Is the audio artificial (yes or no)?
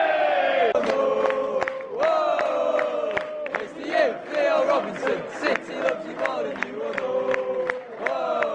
no